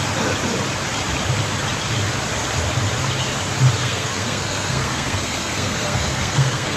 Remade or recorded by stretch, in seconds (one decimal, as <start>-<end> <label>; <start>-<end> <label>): 0.0-3.8 recorded; 3.8-6.8 remade